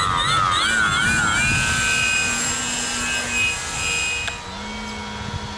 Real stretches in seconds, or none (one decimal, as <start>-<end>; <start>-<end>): 0.0-5.6